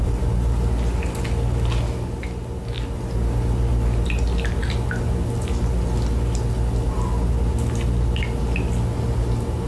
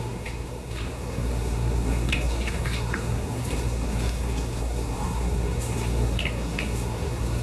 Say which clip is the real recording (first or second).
first